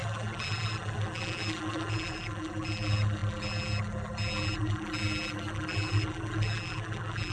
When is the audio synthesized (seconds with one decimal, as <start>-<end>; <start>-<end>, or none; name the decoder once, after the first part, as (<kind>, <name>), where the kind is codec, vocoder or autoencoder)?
0.0-7.3 (vocoder, BigVGAN v2)